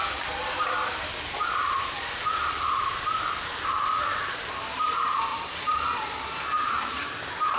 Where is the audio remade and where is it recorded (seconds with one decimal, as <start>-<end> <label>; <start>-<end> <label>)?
0.0-4.6 remade; 4.6-5.3 recorded; 5.3-6.2 remade; 6.2-7.6 recorded